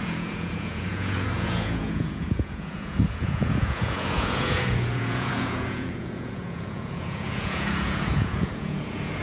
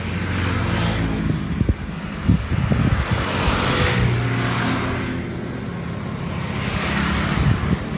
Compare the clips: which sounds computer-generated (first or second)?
first